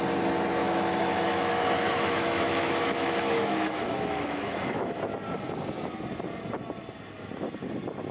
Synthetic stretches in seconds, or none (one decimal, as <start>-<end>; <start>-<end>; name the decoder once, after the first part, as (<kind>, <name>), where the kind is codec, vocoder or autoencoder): 0.6-5.0 (autoencoder, DAC-VAE)